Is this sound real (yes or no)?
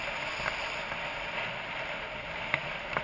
yes